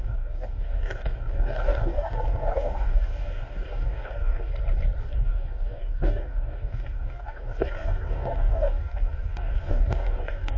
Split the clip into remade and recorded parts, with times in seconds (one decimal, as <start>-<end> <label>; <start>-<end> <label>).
0.0-4.5 remade; 4.5-5.0 recorded; 5.0-10.6 remade